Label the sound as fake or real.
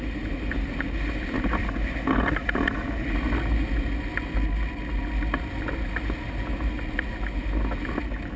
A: real